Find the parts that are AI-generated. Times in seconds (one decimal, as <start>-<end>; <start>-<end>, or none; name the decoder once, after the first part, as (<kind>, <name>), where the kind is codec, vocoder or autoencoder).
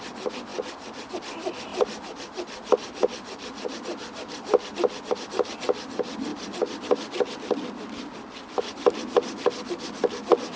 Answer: none